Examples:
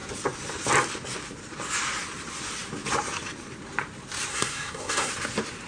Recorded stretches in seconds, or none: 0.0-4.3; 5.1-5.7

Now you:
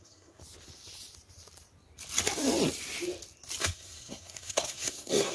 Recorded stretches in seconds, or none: 0.4-3.6

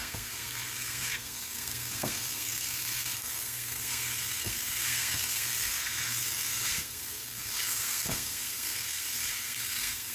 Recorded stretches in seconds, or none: none

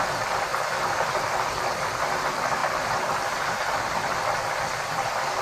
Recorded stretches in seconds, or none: 0.0-5.4

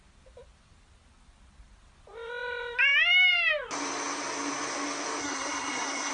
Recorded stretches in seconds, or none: 0.0-5.2